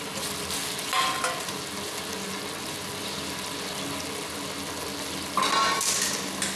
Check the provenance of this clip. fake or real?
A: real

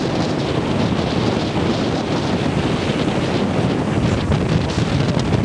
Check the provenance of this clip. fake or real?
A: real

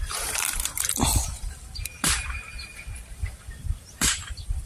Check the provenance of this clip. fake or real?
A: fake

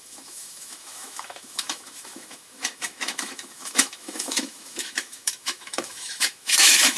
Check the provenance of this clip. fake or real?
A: fake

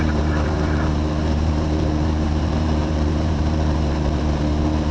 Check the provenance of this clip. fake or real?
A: fake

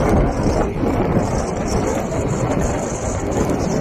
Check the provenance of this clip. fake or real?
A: fake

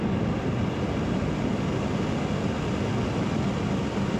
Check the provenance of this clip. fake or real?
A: real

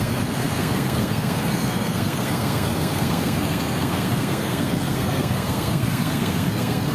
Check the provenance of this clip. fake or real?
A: fake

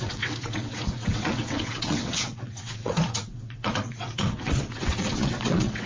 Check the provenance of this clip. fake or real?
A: fake